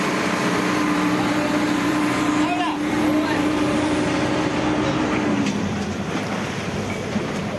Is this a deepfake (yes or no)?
yes